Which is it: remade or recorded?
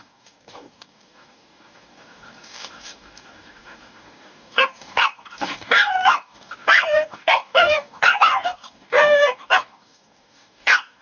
remade